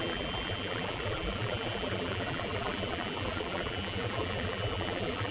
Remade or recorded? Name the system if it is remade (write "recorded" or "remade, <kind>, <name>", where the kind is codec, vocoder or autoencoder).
remade, vocoder, BigVGAN v2